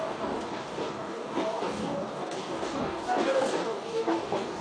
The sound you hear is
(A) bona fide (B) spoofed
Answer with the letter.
B